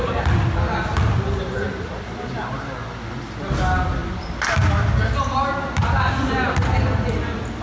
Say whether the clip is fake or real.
real